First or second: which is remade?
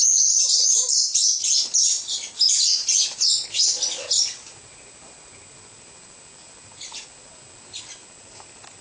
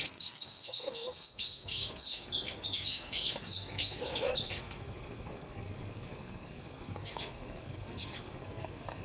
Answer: second